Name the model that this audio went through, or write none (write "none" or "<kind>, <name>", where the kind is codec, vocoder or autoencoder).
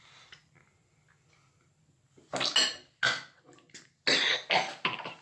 none